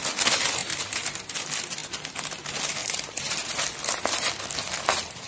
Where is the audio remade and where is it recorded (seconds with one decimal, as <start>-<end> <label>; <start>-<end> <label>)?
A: 0.0-0.6 recorded; 0.6-1.2 remade; 1.2-2.8 recorded; 2.8-3.6 remade; 3.6-5.3 recorded